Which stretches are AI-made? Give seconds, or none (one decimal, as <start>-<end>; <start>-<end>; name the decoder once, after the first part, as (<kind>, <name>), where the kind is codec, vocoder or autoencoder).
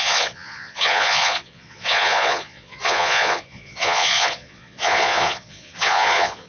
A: 0.0-6.5 (vocoder, Vocos)